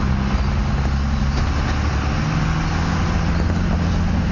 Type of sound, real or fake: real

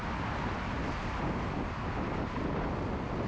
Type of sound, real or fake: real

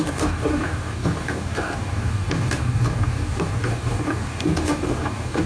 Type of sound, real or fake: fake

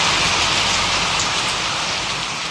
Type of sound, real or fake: real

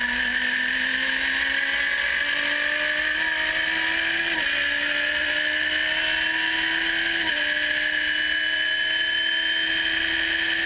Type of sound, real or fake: real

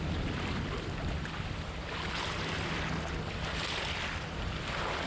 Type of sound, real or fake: real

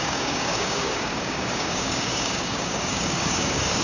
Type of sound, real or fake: fake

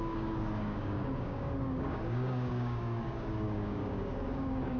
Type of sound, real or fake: fake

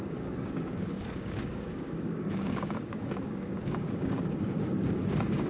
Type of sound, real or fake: fake